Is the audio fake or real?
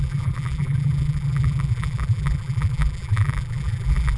fake